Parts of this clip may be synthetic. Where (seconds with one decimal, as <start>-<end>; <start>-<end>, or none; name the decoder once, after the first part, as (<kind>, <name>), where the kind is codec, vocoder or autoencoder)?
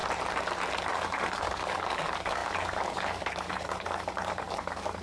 0.9-5.0 (codec, DAC)